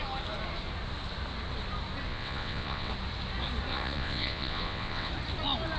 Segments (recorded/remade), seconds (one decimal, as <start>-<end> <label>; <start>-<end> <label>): 0.0-2.1 recorded; 2.1-2.9 remade; 2.9-3.7 recorded; 3.7-5.1 remade; 5.1-5.8 recorded